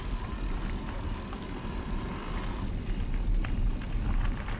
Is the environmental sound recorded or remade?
recorded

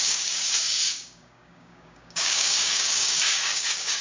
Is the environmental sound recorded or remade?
remade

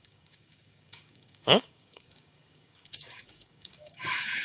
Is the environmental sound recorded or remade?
remade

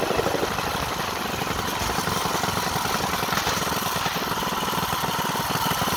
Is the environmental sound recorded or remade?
recorded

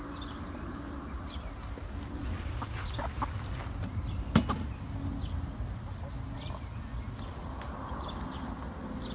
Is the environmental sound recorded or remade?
recorded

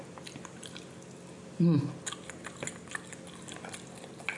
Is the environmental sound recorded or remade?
recorded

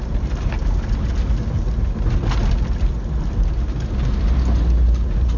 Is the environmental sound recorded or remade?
recorded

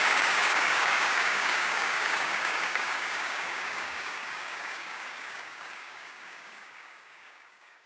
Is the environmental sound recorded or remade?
remade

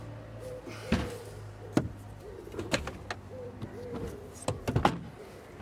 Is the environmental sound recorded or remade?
recorded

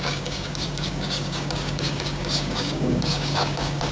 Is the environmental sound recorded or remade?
remade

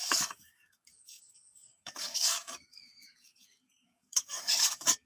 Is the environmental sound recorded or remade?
remade